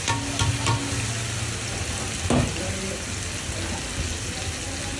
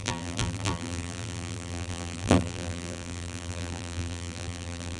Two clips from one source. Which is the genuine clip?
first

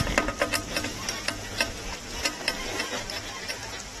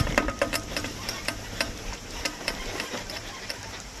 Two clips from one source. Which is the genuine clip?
first